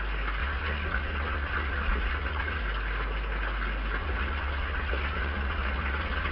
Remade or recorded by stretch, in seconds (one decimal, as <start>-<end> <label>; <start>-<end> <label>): 0.0-0.4 recorded; 0.4-2.6 remade; 2.6-4.0 recorded; 4.0-6.3 remade